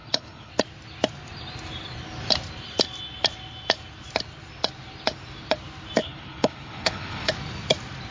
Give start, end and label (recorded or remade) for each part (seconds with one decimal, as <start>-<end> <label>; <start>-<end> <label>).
0.0-0.5 remade; 0.5-6.0 recorded; 6.0-7.3 remade; 7.3-8.1 recorded